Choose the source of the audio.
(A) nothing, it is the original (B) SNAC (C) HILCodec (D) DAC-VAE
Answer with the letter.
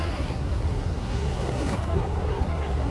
B